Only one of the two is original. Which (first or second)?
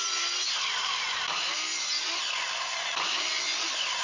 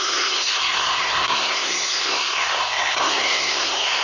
first